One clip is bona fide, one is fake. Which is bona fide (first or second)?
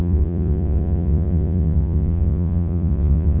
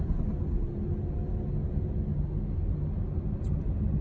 second